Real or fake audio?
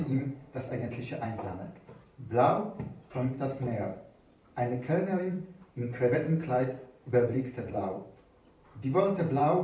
fake